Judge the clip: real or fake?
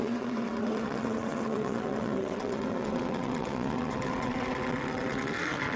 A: fake